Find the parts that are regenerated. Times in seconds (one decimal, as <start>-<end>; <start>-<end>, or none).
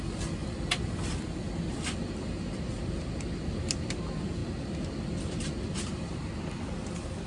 none